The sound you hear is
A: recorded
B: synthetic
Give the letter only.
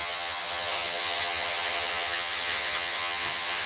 B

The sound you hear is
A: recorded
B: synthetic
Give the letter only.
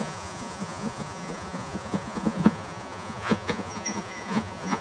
B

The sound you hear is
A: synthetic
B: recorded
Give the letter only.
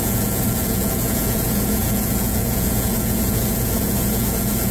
A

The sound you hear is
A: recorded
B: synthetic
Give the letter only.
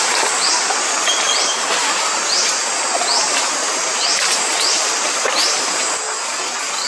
A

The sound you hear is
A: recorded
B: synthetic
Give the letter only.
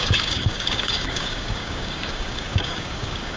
B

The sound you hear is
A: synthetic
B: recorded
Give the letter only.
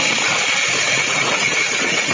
A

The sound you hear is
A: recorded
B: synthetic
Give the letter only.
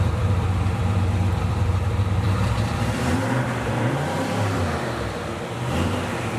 B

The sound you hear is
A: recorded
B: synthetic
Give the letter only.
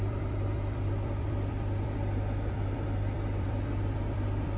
B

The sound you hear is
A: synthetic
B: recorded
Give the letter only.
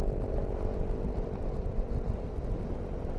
B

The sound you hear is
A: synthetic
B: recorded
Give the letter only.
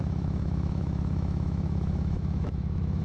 A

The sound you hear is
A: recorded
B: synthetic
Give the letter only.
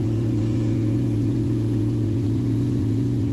B